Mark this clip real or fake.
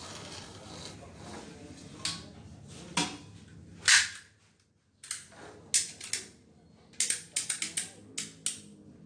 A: real